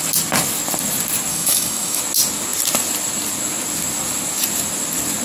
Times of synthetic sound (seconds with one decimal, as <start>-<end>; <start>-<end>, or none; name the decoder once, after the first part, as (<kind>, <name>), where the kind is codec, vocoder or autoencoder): 1.3-2.0 (autoencoder, DAC-VAE)